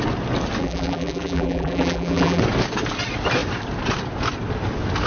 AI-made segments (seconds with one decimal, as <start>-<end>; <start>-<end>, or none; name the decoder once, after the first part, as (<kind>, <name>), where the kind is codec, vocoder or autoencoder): 0.6-2.4 (vocoder, BigVGAN v2)

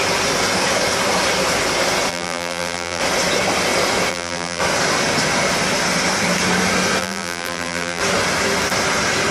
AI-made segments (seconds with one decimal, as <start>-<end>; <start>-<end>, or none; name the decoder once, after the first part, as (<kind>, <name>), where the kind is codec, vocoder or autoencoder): 2.1-3.0 (vocoder, BigVGAN v2); 4.1-4.6; 7.0-8.0

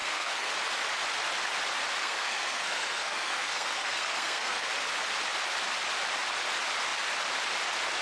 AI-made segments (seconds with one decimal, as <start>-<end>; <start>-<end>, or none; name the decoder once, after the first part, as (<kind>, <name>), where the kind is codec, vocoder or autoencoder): 0.0-0.5 (codec, SNAC); 2.0-4.7

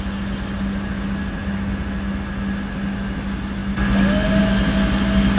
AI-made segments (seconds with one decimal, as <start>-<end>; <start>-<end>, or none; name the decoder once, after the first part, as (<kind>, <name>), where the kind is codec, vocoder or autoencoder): none

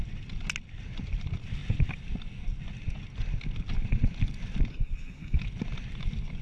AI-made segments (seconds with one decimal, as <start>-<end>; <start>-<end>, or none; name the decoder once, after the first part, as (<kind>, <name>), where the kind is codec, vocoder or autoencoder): 4.7-5.4 (codec, SNAC)

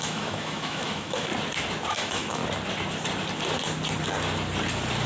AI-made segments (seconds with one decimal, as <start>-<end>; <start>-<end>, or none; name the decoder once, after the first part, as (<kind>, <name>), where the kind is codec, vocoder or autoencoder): 0.0-1.3 (autoencoder, DAC-VAE); 1.9-2.4